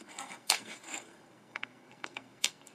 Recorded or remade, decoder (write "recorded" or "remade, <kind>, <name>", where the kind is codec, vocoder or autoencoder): remade, codec, SNAC